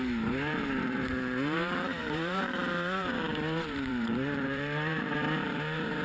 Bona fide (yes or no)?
no